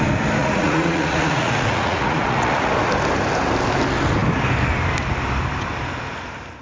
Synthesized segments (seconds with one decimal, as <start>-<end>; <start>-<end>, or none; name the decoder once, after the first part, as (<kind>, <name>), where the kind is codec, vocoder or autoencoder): 0.4-2.7 (vocoder, Vocos)